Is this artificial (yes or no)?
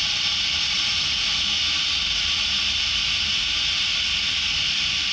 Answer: no